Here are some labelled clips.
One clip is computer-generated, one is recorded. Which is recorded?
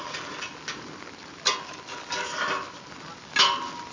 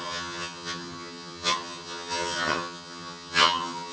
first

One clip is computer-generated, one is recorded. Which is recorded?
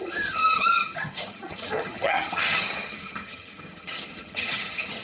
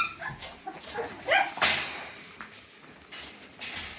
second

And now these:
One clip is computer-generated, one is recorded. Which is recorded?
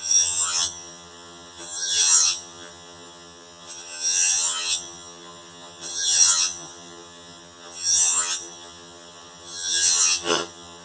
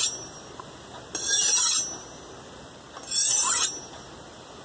second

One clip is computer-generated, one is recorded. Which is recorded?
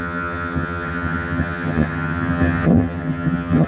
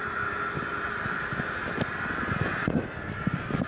second